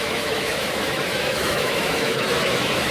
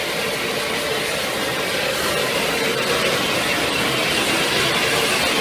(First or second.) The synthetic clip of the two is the first